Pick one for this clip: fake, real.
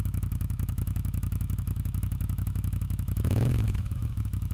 fake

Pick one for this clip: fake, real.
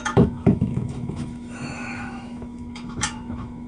fake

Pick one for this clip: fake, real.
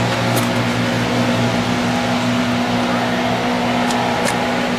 real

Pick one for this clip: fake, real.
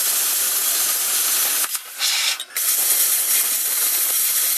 real